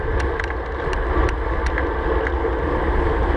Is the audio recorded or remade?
recorded